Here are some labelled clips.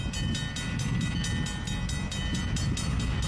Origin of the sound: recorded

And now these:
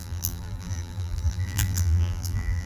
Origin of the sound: remade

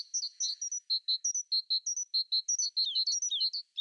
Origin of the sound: recorded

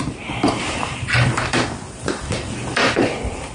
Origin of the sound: remade